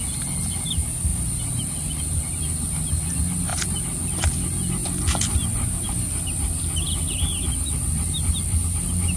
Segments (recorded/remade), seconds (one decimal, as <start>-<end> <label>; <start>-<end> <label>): 0.0-1.1 recorded; 1.1-2.4 remade; 2.4-3.5 recorded; 3.5-4.1 remade; 4.1-9.2 recorded